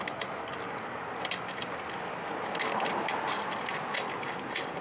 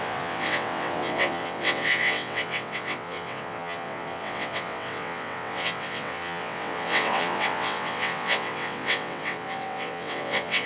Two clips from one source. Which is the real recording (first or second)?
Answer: first